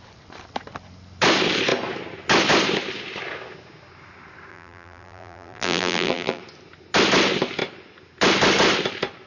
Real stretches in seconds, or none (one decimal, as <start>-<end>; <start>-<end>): 0.0-4.5; 6.4-9.3